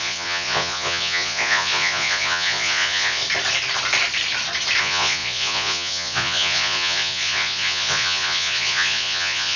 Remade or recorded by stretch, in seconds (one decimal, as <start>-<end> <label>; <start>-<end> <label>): 0.0-3.2 remade; 3.2-4.8 recorded; 4.8-9.6 remade